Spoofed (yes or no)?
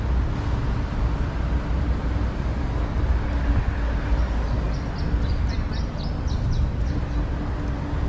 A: no